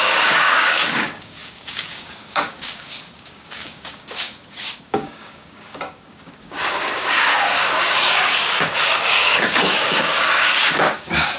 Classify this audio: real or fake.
fake